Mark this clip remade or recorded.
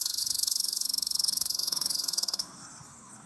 remade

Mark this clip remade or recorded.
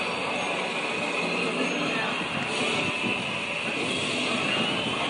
recorded